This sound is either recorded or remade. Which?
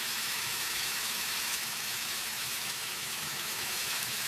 remade